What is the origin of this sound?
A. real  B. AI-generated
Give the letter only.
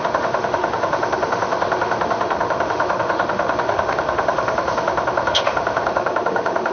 B